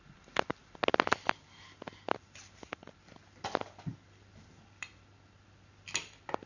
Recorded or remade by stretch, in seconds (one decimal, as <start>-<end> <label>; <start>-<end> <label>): 0.0-6.5 recorded